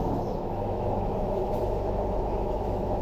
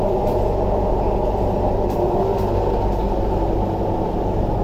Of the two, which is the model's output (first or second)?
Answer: first